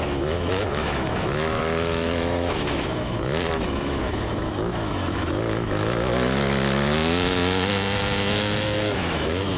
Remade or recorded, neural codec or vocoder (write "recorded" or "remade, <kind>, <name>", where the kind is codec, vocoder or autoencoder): remade, autoencoder, DAC-VAE